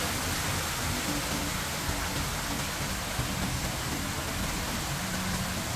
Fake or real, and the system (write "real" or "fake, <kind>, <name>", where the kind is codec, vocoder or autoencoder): real